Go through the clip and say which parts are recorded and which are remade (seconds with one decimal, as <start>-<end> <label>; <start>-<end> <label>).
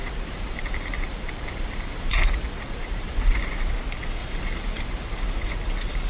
0.0-3.7 remade; 3.7-4.2 recorded; 4.2-5.5 remade; 5.5-6.1 recorded